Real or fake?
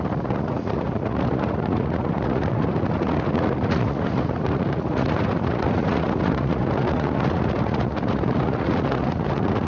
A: fake